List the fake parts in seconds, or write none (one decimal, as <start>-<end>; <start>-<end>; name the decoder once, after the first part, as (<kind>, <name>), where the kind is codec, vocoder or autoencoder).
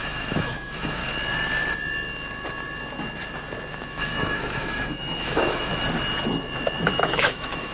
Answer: 0.0-1.0 (autoencoder, DAC-VAE); 3.7-5.7; 7.0-7.7